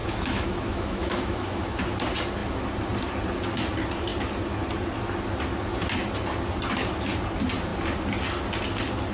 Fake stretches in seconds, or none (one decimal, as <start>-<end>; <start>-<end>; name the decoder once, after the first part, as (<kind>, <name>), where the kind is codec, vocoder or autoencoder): 0.0-1.8 (autoencoder, DAC-VAE)